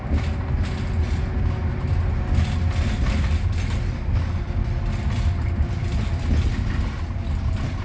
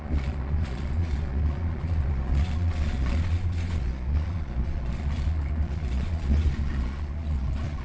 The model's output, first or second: second